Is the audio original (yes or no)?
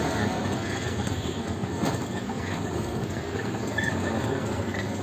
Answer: no